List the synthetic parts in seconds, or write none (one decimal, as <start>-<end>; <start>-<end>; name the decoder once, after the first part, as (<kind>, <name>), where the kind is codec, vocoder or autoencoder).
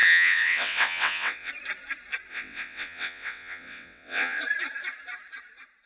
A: 0.0-1.5 (vocoder, WaveNeXt); 2.3-4.4